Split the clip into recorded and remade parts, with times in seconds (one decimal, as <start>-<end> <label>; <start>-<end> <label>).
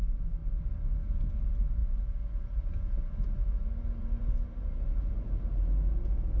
0.0-6.4 recorded